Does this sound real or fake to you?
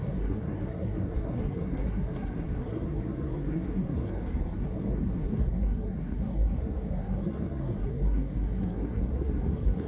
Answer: fake